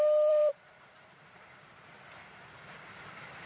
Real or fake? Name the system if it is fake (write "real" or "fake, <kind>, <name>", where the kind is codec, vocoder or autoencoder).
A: fake, vocoder, BigVGAN v2